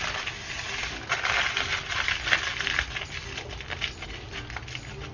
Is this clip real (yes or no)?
yes